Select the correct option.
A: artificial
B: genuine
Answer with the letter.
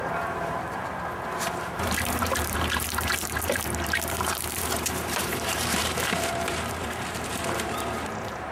A